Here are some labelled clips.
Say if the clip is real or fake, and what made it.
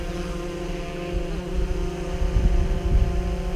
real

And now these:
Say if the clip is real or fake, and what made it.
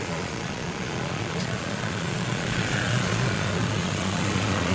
fake, vocoder, Vocos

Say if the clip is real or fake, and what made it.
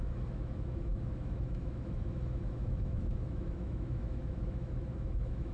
fake, autoencoder, DAC-VAE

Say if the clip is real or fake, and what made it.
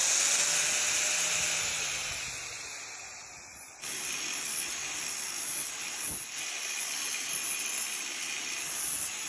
real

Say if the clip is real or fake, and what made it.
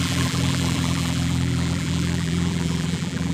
fake, vocoder, BigVGAN v2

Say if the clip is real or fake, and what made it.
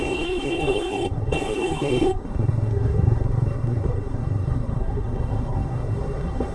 fake, codec, SNAC